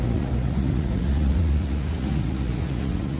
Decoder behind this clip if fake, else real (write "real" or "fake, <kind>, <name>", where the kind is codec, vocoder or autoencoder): fake, vocoder, Vocos